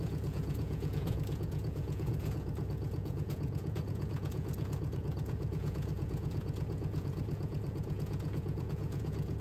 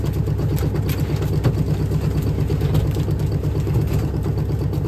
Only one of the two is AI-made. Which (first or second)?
first